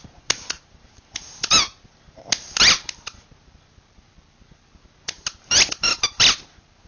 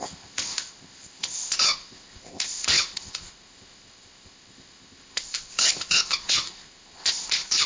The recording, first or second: first